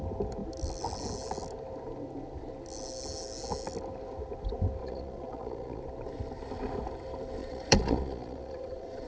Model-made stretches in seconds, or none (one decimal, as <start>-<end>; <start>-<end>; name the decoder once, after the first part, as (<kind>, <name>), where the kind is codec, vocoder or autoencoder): 4.8-5.8 (vocoder, Vocos); 7.4-9.1